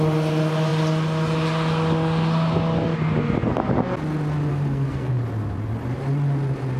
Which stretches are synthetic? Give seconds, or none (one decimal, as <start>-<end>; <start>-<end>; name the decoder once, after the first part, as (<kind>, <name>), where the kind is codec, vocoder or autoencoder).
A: 4.5-5.1 (codec, SNAC)